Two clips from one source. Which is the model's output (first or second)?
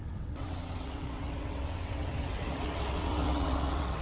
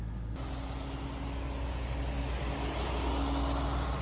first